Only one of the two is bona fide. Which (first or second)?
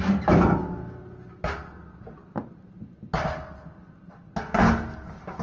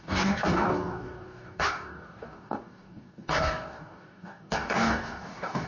first